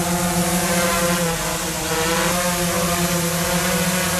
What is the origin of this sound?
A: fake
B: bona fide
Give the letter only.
B